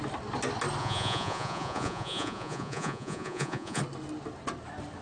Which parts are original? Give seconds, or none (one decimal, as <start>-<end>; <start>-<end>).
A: 0.0-0.8; 3.8-5.0